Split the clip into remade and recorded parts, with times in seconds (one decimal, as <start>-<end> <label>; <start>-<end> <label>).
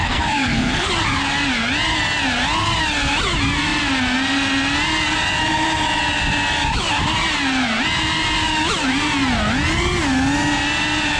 0.0-0.9 remade; 0.9-11.2 recorded